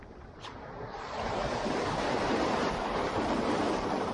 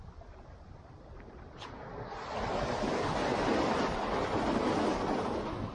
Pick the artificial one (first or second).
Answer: first